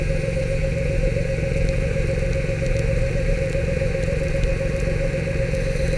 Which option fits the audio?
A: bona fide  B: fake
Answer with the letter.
B